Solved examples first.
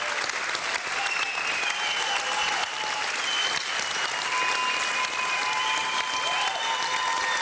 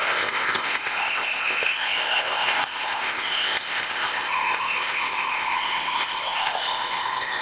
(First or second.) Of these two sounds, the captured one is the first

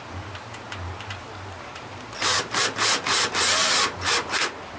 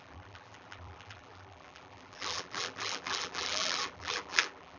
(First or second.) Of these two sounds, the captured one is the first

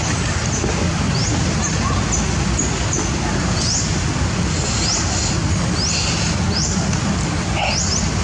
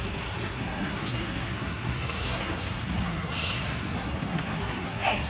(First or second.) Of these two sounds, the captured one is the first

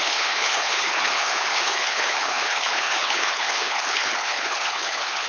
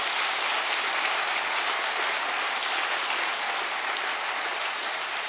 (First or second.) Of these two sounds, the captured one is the second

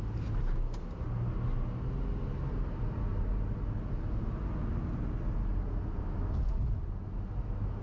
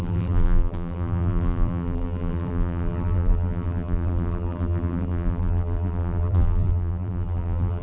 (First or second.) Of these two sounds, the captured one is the first